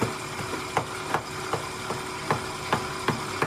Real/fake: real